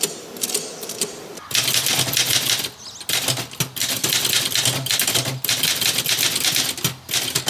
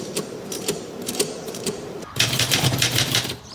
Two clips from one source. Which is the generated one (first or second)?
second